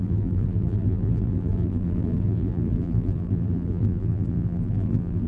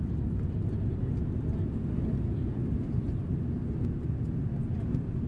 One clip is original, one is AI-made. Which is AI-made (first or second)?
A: first